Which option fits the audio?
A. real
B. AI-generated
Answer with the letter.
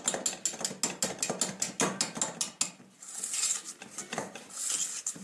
A